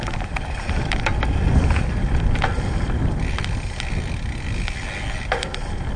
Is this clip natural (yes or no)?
yes